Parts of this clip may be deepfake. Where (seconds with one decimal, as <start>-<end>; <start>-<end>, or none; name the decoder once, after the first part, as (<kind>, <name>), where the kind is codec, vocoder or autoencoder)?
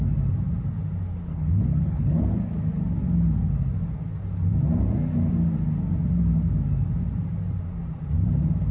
1.3-2.2 (codec, HILCodec)